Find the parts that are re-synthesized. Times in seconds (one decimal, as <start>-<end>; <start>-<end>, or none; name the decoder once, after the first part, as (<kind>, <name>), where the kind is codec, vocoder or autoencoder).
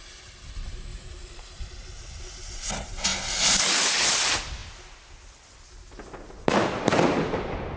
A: 0.9-1.6 (vocoder, BigVGAN v2)